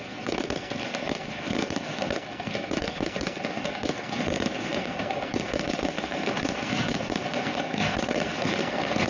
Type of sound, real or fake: fake